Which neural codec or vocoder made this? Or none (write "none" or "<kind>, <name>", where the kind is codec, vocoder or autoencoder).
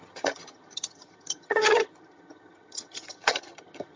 vocoder, HiFi-GAN